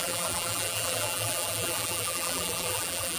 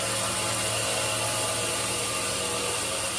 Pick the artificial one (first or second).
first